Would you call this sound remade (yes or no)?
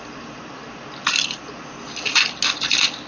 no